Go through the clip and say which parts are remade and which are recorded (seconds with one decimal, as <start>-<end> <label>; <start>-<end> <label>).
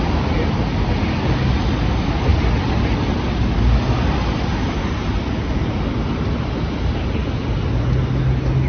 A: 0.0-8.7 recorded